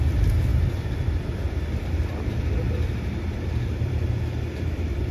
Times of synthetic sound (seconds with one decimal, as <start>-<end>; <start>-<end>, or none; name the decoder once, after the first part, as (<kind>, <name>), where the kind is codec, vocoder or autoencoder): 0.0-5.1 (vocoder, BigVGAN v2)